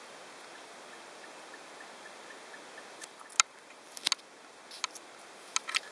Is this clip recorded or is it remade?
recorded